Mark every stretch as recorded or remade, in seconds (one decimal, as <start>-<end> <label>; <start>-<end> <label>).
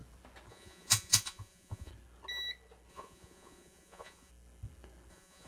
0.0-0.5 recorded; 0.5-1.9 remade; 1.9-2.9 recorded; 2.9-4.3 remade; 4.3-5.1 recorded; 5.1-5.5 remade